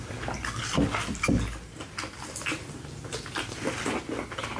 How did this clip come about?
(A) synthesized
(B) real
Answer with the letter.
B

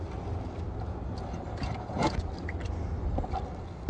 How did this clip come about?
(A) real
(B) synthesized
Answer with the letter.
A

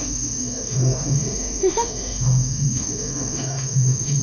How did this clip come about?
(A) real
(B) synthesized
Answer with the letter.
B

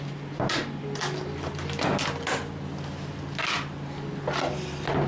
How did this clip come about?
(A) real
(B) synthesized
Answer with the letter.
A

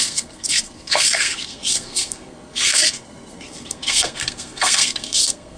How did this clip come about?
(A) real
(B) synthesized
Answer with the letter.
B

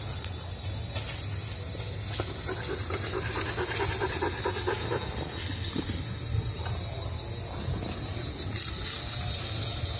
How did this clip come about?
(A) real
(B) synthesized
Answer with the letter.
A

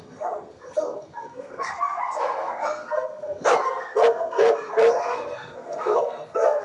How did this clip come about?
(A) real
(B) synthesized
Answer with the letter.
B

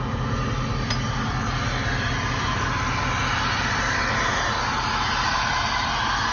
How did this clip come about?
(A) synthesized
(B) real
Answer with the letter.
B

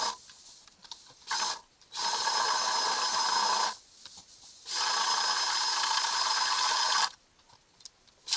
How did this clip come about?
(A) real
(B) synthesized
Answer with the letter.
A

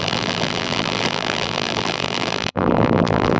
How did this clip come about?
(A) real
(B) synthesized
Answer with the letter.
B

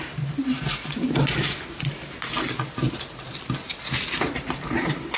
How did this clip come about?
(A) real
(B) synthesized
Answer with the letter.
A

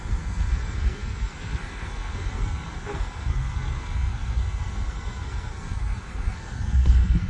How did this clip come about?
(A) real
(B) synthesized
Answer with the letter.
B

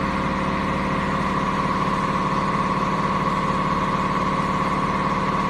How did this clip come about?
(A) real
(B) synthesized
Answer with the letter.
A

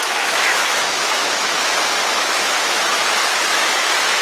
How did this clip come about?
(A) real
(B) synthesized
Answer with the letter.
B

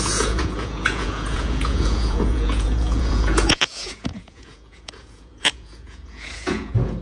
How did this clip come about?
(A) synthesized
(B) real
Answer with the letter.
A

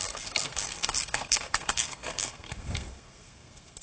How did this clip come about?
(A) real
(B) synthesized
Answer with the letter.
B